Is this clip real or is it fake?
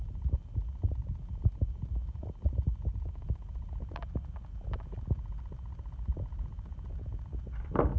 real